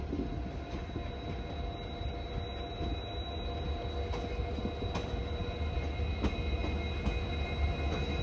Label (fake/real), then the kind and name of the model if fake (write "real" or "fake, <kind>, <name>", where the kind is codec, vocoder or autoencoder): real